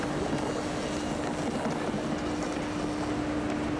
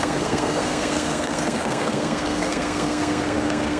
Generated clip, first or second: second